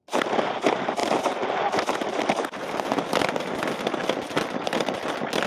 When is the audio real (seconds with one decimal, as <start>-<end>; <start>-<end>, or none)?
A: 0.0-5.5